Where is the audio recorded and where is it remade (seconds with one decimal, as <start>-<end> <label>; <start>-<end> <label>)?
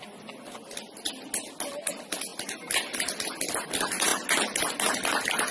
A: 0.0-5.5 recorded